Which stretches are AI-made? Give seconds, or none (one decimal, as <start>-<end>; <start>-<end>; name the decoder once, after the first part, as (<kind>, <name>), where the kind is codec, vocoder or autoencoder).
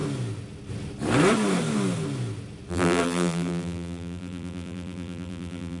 2.7-5.8 (vocoder, BigVGAN v2)